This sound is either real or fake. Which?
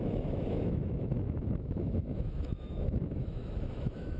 fake